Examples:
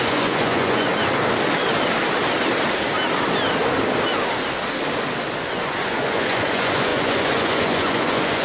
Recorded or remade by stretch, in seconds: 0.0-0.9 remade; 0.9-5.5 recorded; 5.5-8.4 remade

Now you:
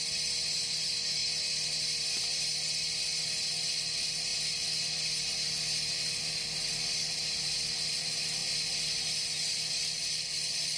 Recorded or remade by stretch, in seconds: 0.0-10.8 recorded